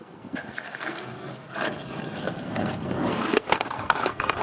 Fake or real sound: fake